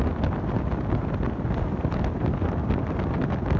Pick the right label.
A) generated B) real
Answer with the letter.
B